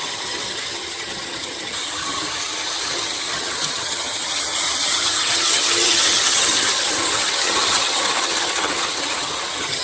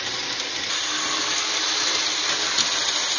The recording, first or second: second